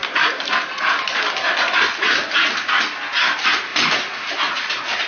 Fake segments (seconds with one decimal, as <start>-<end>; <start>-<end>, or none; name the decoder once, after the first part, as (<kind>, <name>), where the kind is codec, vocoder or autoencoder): none